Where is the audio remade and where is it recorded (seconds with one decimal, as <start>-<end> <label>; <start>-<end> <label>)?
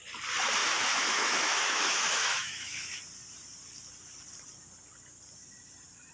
0.0-0.6 recorded; 0.6-3.0 remade; 3.0-6.1 recorded